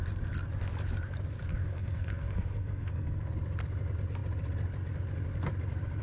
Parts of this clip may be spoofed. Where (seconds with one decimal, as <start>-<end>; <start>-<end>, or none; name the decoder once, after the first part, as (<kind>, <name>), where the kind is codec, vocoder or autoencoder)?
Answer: 1.5-3.3 (codec, SNAC)